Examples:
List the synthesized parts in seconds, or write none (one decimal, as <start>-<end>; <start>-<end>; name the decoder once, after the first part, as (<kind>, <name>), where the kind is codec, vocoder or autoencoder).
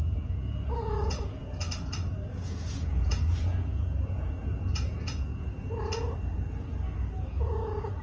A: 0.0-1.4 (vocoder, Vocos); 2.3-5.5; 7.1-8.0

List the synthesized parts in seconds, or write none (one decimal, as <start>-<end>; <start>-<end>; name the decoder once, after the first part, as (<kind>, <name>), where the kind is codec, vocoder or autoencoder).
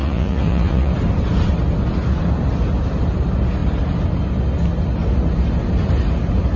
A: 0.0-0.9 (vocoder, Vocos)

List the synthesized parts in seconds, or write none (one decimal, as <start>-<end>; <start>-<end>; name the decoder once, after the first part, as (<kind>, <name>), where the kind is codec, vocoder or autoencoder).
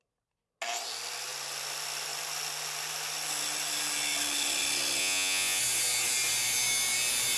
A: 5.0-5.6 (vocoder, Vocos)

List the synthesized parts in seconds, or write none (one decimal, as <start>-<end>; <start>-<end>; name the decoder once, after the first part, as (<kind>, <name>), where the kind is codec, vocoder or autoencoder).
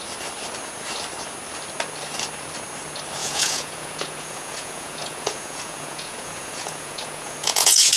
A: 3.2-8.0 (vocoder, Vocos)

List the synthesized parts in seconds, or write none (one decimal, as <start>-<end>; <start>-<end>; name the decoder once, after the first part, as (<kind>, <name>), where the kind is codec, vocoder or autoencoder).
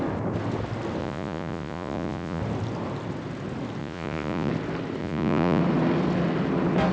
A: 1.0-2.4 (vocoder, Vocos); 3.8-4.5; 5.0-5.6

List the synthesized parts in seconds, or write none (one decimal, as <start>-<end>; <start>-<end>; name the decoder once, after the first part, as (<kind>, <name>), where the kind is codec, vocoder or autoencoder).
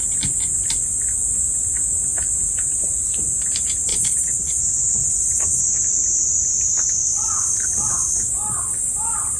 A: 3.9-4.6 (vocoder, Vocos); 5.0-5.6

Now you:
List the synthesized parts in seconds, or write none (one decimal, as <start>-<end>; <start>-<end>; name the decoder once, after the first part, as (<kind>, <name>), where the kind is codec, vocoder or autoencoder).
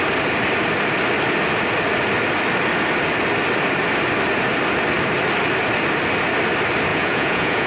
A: 6.9-7.7 (vocoder, Vocos)